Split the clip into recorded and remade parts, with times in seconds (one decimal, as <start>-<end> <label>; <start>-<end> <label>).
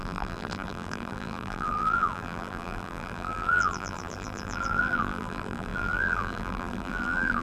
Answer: 0.0-7.4 remade